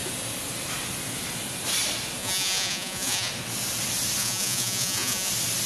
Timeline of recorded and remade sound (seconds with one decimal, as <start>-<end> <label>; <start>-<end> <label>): 0.0-2.2 recorded; 2.2-3.3 remade; 3.3-4.2 recorded; 4.2-5.3 remade; 5.3-5.7 recorded